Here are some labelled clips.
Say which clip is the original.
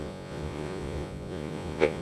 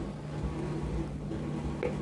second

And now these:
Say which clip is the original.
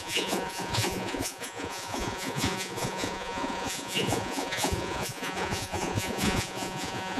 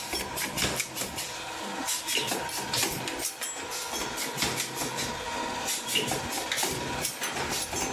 second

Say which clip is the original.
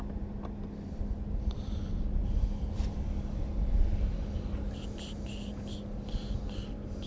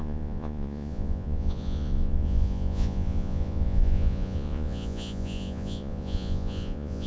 first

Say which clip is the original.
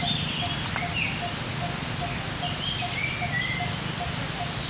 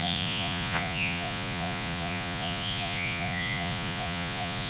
first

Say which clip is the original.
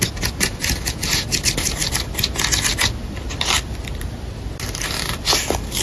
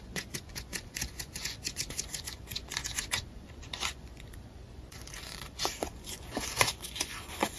first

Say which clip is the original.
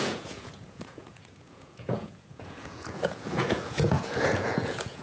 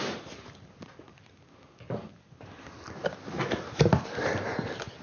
second